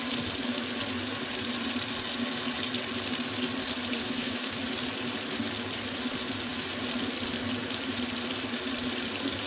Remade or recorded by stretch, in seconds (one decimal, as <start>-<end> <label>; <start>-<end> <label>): 0.0-4.0 recorded; 4.0-4.6 remade; 4.6-9.5 recorded